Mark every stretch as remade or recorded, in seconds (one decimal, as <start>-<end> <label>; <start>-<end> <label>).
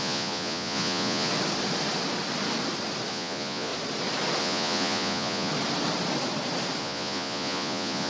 0.0-1.3 remade; 1.3-3.1 recorded; 3.1-3.7 remade; 3.7-4.4 recorded; 4.4-5.5 remade; 5.5-6.8 recorded; 6.8-8.1 remade